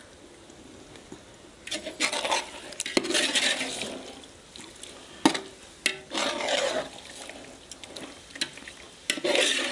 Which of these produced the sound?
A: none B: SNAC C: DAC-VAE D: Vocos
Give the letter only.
A